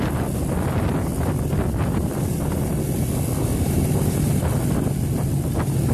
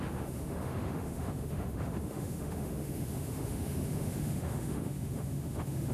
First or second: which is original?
first